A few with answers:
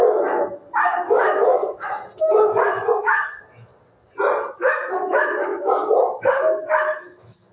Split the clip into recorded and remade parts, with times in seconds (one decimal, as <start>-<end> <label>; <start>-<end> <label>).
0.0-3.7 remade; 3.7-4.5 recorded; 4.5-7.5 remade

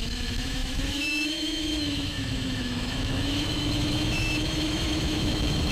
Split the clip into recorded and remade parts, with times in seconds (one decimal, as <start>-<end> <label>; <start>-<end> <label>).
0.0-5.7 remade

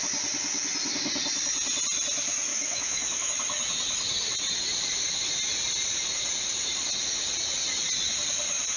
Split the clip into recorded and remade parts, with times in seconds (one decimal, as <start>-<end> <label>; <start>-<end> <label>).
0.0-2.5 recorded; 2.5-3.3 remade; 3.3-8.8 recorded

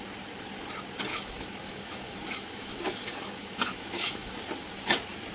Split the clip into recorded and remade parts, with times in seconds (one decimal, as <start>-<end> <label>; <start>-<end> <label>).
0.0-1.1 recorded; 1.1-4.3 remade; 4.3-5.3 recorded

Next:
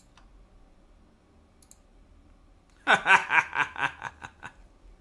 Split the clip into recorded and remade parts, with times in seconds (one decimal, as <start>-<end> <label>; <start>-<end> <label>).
0.0-3.2 recorded; 3.2-4.1 remade; 4.1-5.0 recorded